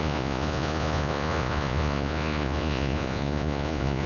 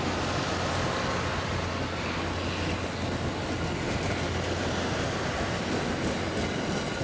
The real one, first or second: second